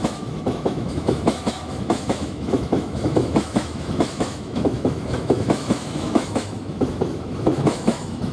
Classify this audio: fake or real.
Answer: fake